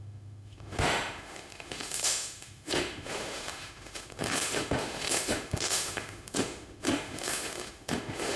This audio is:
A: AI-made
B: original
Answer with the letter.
A